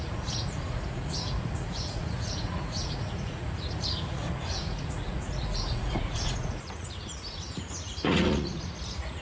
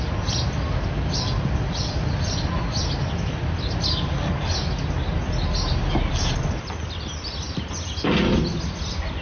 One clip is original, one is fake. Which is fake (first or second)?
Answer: first